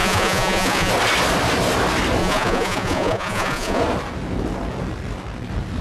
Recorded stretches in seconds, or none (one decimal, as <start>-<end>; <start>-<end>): 0.9-2.2; 3.8-5.8

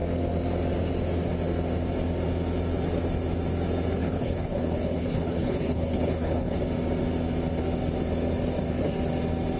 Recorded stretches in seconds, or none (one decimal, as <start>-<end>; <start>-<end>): 0.0-4.0; 6.6-9.6

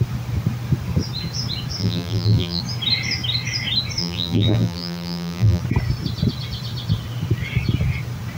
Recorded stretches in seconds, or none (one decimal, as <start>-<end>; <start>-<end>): 0.0-1.8; 2.6-4.0; 5.6-8.4

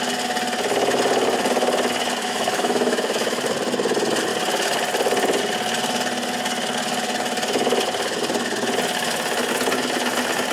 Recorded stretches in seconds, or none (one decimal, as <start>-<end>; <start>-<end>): 0.0-2.2; 3.5-10.5